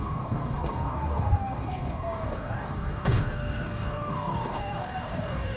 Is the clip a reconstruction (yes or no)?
yes